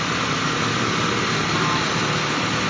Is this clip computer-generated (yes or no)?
no